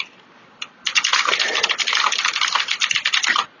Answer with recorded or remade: recorded